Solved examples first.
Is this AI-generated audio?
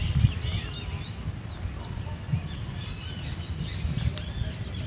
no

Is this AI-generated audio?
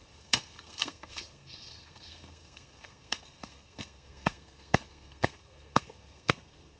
yes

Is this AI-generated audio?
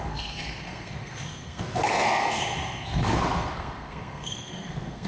yes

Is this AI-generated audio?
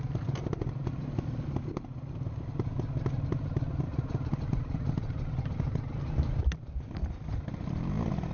no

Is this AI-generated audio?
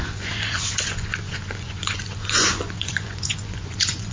yes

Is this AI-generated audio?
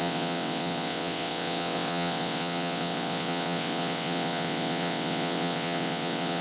yes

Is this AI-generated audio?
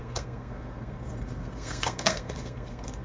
yes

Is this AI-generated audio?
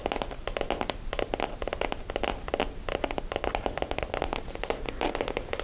no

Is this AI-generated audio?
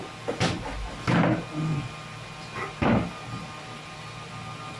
no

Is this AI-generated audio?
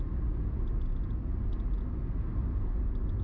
no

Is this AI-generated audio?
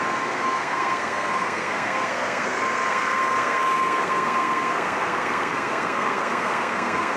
yes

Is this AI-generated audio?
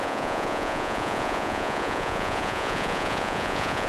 yes